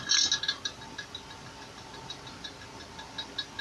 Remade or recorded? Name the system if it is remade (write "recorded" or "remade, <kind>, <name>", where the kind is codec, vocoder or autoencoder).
recorded